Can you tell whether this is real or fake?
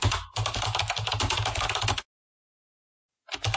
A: real